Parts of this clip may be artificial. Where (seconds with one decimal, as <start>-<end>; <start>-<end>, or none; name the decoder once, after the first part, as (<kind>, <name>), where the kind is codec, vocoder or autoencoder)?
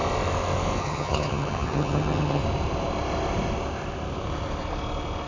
0.8-2.4 (vocoder, HiFi-GAN)